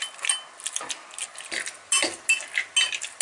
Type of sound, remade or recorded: recorded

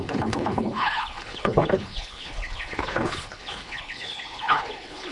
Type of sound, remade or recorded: remade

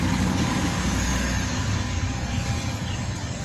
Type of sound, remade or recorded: remade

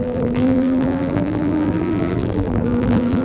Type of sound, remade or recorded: remade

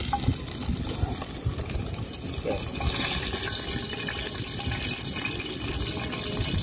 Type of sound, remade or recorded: recorded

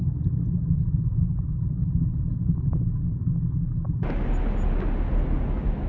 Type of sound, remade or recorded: recorded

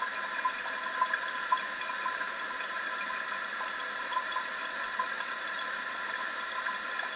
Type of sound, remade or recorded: recorded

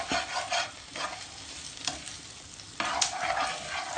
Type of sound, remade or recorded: recorded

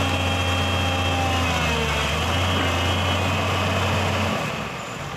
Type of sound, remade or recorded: recorded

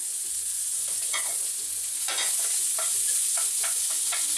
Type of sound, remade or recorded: remade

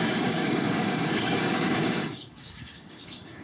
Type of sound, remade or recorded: remade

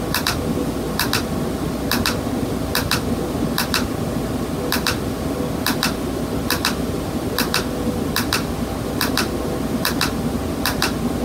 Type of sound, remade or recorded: recorded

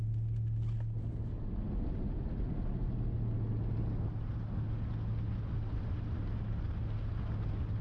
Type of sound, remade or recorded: recorded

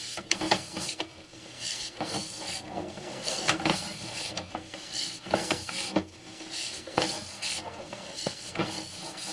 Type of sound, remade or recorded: remade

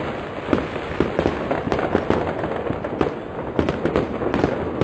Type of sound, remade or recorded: recorded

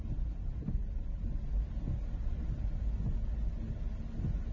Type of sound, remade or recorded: recorded